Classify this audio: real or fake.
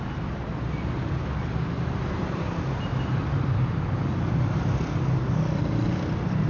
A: real